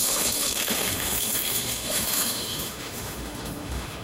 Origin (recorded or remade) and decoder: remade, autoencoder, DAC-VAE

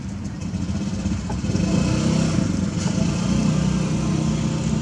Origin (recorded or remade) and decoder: recorded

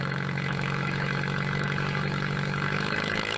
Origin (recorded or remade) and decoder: remade, autoencoder, DAC-VAE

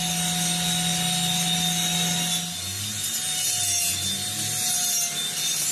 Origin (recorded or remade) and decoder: recorded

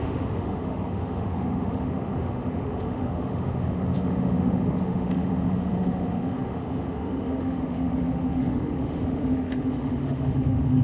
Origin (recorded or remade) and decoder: remade, autoencoder, DAC-VAE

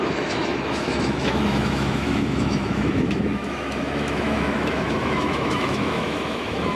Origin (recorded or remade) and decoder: remade, autoencoder, DAC-VAE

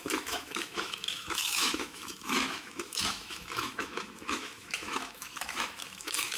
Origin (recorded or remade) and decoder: remade, autoencoder, DAC-VAE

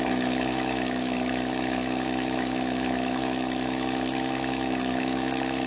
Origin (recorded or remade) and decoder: remade, autoencoder, DAC-VAE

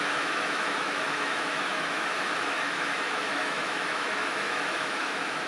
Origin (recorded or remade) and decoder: remade, autoencoder, DAC-VAE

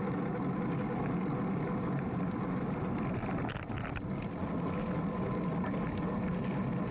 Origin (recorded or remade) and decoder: recorded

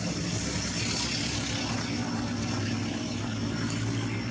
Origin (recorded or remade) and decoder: recorded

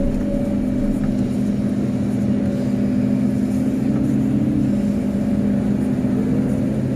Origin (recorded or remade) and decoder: recorded